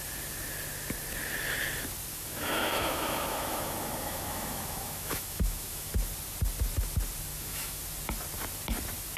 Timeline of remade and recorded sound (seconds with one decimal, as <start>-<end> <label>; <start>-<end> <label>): 0.0-2.1 recorded; 2.1-5.9 remade; 5.9-7.3 recorded; 7.3-7.8 remade; 7.8-9.2 recorded